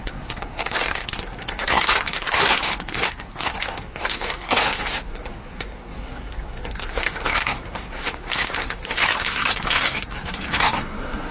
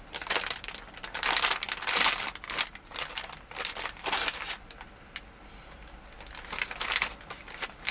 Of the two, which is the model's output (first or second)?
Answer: first